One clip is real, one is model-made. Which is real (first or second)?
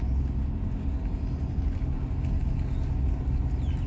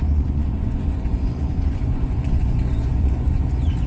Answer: first